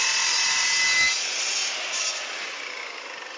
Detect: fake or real real